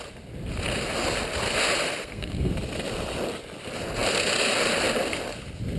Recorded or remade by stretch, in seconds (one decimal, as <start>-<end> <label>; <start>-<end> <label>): 0.0-2.0 recorded; 2.0-2.5 remade; 2.5-5.8 recorded